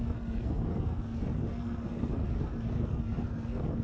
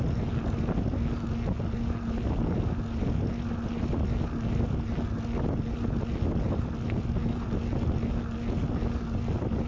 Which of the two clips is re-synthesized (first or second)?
first